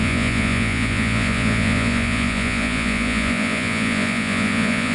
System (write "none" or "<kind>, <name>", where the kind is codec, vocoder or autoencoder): vocoder, Vocos